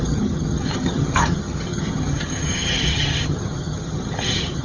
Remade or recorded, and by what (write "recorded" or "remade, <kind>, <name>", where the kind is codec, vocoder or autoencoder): remade, vocoder, HiFi-GAN